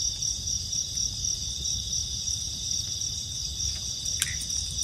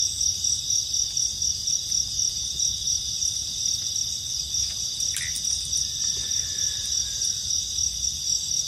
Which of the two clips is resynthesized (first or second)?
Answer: first